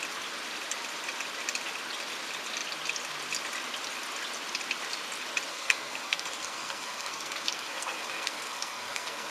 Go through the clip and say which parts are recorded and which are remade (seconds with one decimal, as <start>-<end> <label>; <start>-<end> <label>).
0.0-5.5 recorded; 5.5-9.3 remade